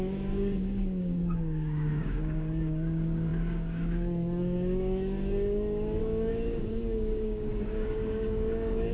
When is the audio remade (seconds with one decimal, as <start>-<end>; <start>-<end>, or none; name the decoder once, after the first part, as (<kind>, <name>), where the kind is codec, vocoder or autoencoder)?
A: 0.0-8.9 (codec, DAC)